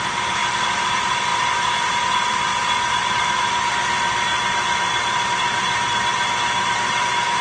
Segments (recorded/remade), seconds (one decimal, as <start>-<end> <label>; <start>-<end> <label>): 0.0-0.4 remade; 0.4-0.9 recorded; 0.9-2.5 remade; 2.5-3.1 recorded; 3.1-4.3 remade; 4.3-7.0 recorded; 7.0-7.4 remade